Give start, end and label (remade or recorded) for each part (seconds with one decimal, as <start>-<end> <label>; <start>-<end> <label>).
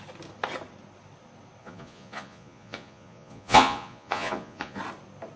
0.0-1.6 recorded; 1.6-4.8 remade; 4.8-5.4 recorded